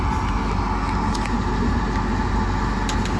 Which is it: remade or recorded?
recorded